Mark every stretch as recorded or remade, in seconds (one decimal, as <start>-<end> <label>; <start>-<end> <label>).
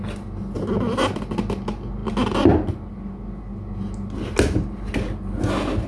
0.0-5.9 recorded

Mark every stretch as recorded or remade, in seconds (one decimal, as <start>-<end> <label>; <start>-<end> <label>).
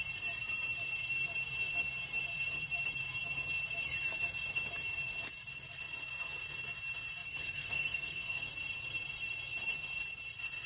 0.0-7.6 recorded; 7.6-8.5 remade; 8.5-10.7 recorded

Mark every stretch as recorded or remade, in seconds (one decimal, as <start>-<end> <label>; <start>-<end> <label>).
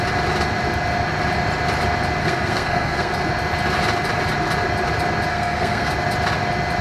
0.0-2.2 recorded; 2.2-3.1 remade; 3.1-5.3 recorded; 5.3-5.9 remade; 5.9-6.8 recorded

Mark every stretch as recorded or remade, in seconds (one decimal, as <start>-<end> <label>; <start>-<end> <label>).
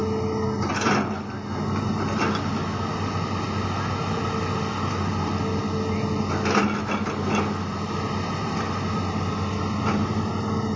0.0-10.8 recorded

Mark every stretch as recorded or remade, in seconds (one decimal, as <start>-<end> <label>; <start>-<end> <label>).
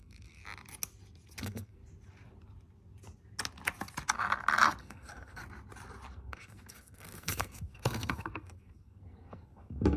0.0-0.4 remade; 0.4-1.4 recorded; 1.4-1.8 remade; 1.8-4.8 recorded; 4.8-5.4 remade; 5.4-6.1 recorded; 6.1-10.0 remade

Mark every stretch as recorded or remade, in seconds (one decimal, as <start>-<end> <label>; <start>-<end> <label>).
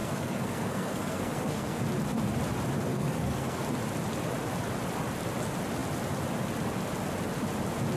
0.0-1.8 remade; 1.8-2.9 recorded; 2.9-3.6 remade; 3.6-8.0 recorded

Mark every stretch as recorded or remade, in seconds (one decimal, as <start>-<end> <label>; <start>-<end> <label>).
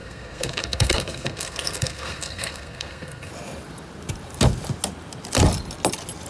0.0-3.3 remade; 3.3-6.3 recorded